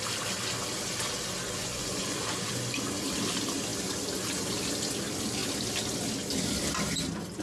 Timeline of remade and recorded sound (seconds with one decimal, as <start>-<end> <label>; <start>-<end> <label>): 0.0-1.6 recorded; 1.6-2.8 remade; 2.8-7.4 recorded